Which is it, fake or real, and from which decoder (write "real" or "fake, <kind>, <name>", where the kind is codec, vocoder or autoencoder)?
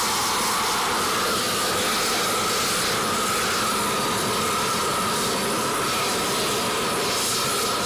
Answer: real